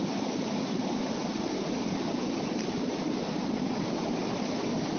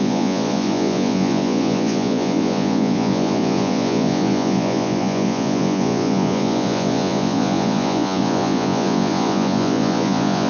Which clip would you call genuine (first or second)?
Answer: first